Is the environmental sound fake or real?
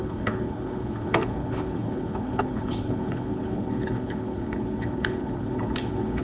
fake